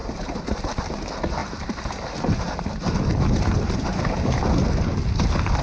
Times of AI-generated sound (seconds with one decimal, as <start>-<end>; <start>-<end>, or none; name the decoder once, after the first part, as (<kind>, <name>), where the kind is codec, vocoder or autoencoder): 0.0-0.8 (vocoder, BigVGAN v2); 1.4-4.8